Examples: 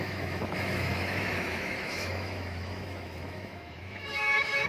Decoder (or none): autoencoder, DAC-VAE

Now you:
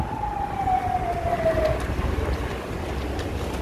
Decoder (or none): none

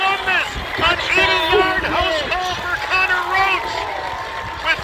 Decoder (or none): none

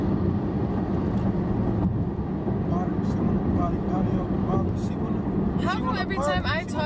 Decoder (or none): none